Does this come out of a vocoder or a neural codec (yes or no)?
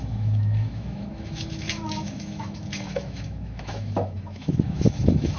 yes